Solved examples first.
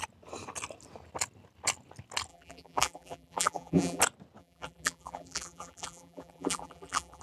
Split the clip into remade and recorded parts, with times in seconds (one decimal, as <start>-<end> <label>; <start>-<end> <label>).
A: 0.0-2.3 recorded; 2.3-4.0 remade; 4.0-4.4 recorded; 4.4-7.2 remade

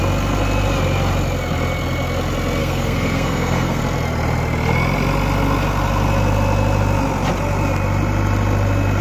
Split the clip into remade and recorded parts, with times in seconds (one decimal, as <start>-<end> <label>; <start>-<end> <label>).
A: 0.0-2.6 recorded; 2.6-3.8 remade; 3.8-9.0 recorded

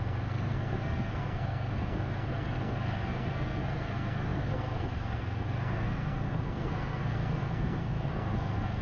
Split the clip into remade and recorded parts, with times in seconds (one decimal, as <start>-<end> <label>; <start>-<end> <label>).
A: 0.0-8.8 remade

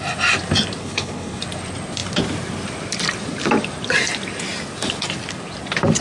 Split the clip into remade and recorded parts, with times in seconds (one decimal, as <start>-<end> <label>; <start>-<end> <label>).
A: 0.0-0.8 recorded; 0.8-1.4 remade; 1.4-6.0 recorded

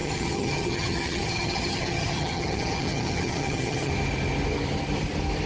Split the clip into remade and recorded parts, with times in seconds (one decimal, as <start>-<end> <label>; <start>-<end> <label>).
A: 0.0-3.9 remade; 3.9-5.5 recorded

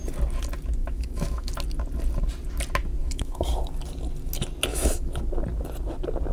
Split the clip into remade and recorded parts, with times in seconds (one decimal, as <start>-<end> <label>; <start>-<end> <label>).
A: 0.0-0.8 recorded; 0.8-1.5 remade; 1.5-3.0 recorded; 3.0-3.5 remade; 3.5-4.7 recorded; 4.7-5.2 remade; 5.2-6.3 recorded